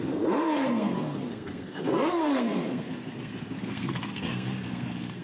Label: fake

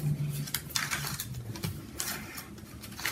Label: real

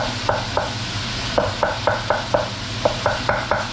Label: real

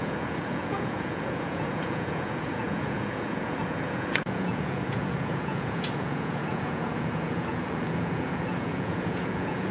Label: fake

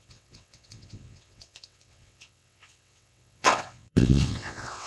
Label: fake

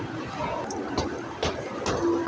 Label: real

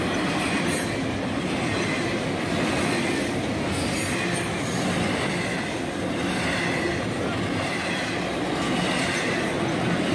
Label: real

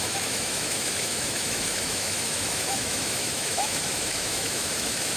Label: fake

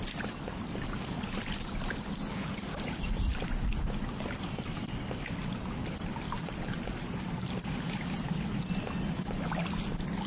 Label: real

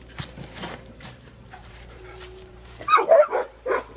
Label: fake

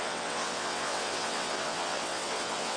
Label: fake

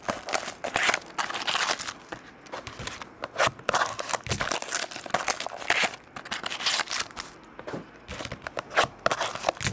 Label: real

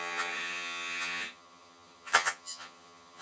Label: fake